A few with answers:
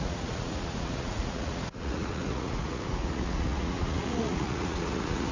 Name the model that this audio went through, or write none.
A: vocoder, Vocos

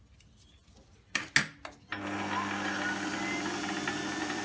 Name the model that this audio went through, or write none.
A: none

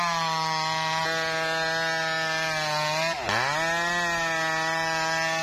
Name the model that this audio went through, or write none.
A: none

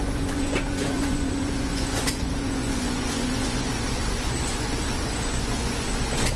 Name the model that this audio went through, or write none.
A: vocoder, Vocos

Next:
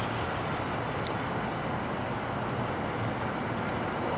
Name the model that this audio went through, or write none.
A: none